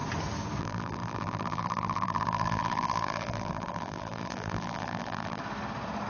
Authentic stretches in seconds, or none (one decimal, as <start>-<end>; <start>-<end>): 0.0-0.6; 5.4-6.1